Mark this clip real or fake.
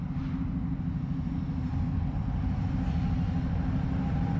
real